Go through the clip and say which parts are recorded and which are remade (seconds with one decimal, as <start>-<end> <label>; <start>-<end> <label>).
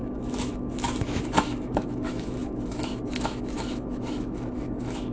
0.0-5.1 remade